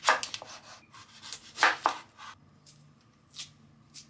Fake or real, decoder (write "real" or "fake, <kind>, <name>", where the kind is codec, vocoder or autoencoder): real